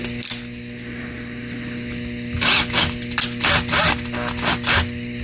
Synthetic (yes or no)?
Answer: no